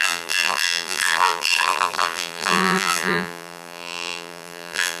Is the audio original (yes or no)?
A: no